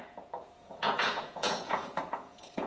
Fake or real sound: fake